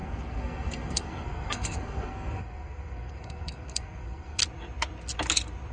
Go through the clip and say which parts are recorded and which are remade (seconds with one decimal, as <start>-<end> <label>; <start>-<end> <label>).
0.0-4.4 remade; 4.4-5.7 recorded